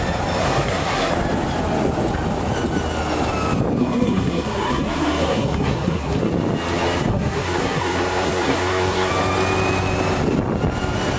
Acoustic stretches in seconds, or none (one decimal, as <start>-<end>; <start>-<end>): 0.0-0.4; 1.1-3.8; 6.3-7.1; 9.1-11.2